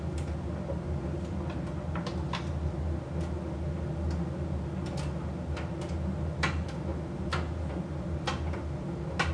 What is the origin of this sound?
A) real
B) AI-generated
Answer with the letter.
A